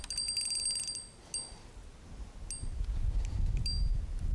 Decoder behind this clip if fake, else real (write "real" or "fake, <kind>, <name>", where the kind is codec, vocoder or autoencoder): real